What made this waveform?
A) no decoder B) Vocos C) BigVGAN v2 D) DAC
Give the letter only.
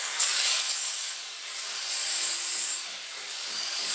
D